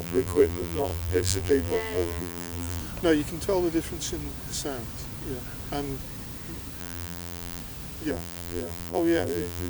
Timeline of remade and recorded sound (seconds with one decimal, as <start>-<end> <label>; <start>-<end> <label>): 0.0-2.8 remade; 2.8-6.8 recorded; 6.8-7.6 remade; 7.6-8.1 recorded; 8.1-9.7 remade